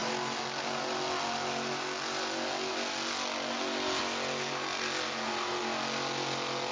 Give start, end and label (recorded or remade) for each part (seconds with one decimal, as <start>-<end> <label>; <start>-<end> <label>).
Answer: 0.0-6.7 recorded